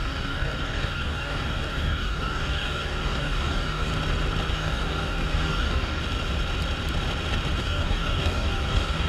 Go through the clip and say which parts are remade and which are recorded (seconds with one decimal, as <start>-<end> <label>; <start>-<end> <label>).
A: 0.0-3.9 remade; 3.9-4.5 recorded; 4.5-6.0 remade; 6.0-7.6 recorded; 7.6-9.1 remade